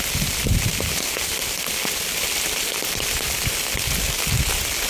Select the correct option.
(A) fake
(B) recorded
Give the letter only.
B